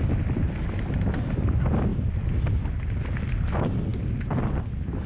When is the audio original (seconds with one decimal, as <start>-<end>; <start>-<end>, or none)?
0.0-5.1